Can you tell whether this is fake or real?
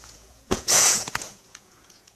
fake